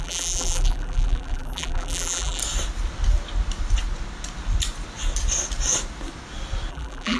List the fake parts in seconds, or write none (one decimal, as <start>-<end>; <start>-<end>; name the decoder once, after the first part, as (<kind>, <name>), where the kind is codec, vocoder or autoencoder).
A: 0.0-2.4 (vocoder, BigVGAN v2); 6.7-7.2